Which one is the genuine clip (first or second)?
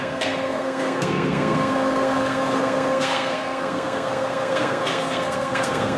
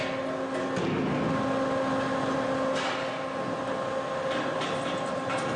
second